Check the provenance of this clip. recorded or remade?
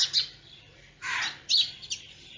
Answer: recorded